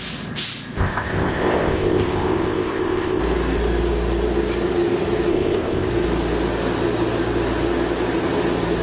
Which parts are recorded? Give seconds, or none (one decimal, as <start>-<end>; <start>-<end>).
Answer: 0.0-0.8; 3.2-5.3; 5.9-8.8